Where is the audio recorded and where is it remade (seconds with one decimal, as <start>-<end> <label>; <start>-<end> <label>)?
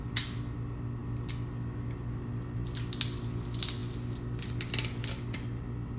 0.0-6.0 recorded